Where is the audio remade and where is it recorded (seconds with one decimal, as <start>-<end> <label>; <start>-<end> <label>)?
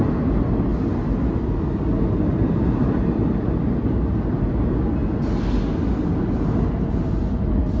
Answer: 0.0-7.8 recorded